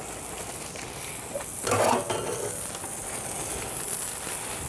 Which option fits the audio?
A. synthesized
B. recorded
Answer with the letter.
B